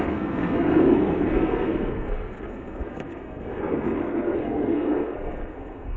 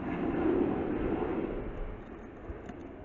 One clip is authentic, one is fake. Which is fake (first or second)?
first